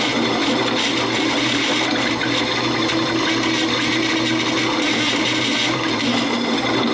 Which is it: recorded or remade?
recorded